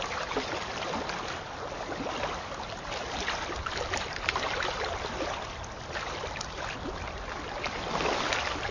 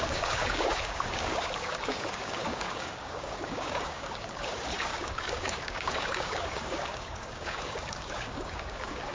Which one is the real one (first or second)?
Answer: first